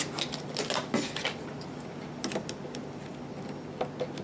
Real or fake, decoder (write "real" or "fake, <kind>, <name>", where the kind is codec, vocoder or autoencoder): real